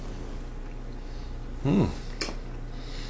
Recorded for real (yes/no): yes